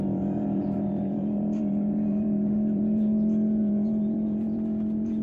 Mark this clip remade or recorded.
remade